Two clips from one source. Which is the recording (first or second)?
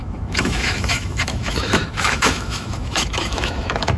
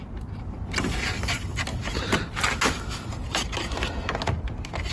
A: second